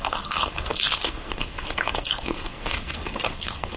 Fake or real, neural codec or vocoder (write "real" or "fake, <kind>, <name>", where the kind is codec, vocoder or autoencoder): fake, codec, SNAC